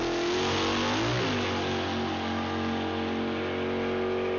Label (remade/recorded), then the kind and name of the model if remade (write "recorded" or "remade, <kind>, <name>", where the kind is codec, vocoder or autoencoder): recorded